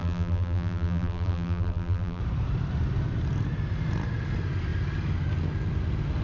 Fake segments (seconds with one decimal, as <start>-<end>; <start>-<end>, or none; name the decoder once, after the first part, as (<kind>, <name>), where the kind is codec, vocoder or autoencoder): 0.0-2.2 (vocoder, BigVGAN v2)